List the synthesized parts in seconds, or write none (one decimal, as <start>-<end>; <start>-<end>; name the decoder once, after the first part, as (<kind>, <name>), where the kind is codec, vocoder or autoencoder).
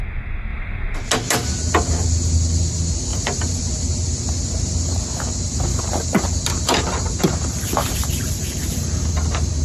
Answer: 0.5-1.1 (vocoder, BigVGAN v2); 3.1-3.7; 5.7-9.1